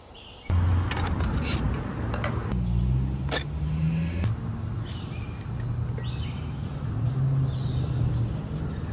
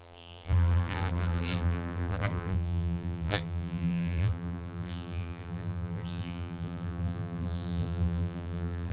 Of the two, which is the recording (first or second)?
first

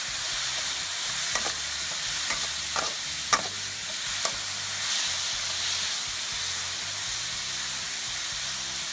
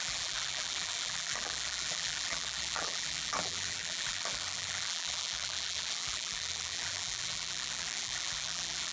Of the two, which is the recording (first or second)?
first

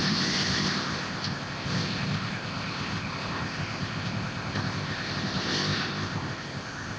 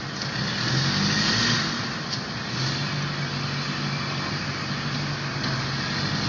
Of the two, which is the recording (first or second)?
second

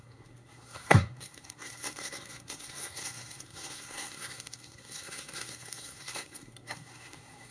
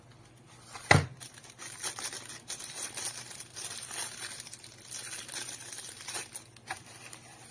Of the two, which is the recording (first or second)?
second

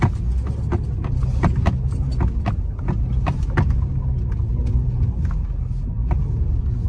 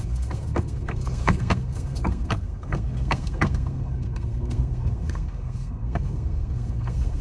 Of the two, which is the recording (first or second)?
first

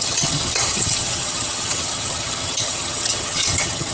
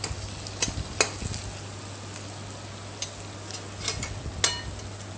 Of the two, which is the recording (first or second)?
second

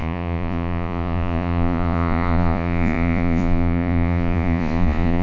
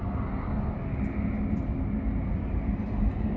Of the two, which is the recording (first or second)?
second